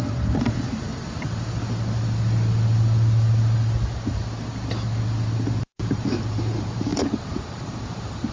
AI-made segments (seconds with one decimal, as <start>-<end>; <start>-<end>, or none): 0.0-0.9; 5.6-8.3